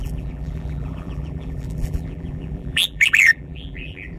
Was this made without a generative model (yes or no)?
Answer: no